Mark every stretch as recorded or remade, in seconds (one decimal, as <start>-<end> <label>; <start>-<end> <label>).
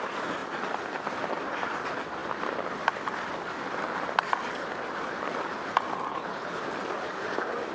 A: 0.0-6.1 recorded; 6.1-6.6 remade; 6.6-7.7 recorded